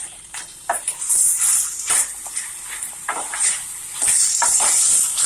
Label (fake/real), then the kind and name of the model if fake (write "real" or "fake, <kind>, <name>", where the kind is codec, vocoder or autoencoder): fake, vocoder, BigVGAN v2